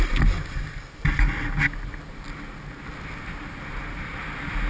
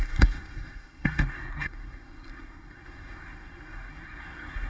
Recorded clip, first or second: first